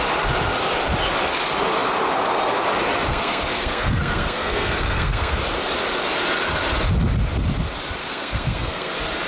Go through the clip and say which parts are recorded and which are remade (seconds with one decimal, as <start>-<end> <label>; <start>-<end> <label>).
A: 0.0-3.1 recorded; 3.1-5.4 remade; 5.4-8.0 recorded; 8.0-8.9 remade; 8.9-9.3 recorded

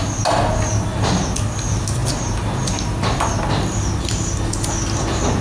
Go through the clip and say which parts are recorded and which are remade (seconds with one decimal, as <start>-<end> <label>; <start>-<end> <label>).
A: 0.0-5.4 recorded

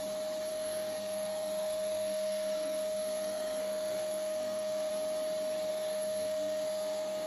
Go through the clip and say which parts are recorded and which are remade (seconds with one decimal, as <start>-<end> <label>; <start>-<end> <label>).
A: 0.0-0.5 recorded; 0.5-4.9 remade; 4.9-5.7 recorded; 5.7-7.3 remade

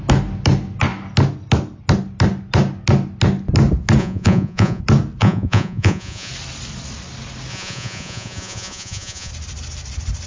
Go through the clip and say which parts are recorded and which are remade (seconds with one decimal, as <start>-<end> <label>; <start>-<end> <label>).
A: 0.0-4.0 recorded; 4.0-4.8 remade; 4.8-5.2 recorded; 5.2-6.3 remade; 6.3-7.5 recorded; 7.5-9.3 remade; 9.3-10.3 recorded

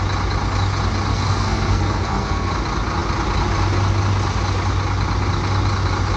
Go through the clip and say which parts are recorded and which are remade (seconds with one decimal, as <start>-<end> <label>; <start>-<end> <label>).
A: 0.0-1.1 recorded; 1.1-2.5 remade; 2.5-6.2 recorded

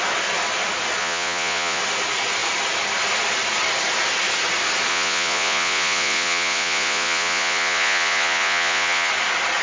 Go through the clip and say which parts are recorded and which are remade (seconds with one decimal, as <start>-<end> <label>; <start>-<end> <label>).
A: 0.0-1.0 recorded; 1.0-1.8 remade; 1.8-4.9 recorded; 4.9-9.1 remade; 9.1-9.6 recorded

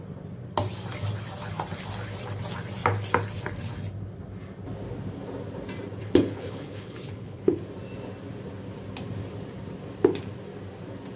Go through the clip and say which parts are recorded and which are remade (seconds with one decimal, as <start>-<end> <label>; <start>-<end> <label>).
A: 0.0-6.0 recorded; 6.0-7.6 remade; 7.6-11.2 recorded